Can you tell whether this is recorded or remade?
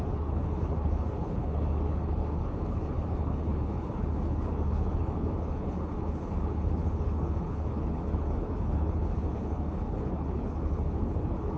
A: remade